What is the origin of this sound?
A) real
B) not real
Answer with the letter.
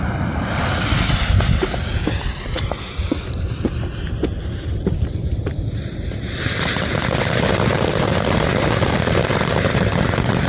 A